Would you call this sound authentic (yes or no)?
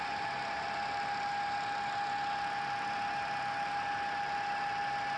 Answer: yes